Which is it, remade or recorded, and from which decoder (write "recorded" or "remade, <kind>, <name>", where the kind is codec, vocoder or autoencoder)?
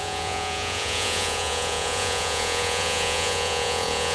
remade, vocoder, Vocos